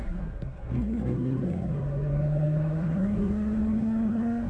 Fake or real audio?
fake